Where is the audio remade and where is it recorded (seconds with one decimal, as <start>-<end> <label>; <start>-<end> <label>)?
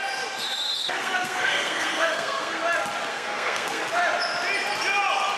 0.0-0.8 recorded; 0.8-2.6 remade; 2.6-3.1 recorded; 3.1-3.8 remade; 3.8-5.4 recorded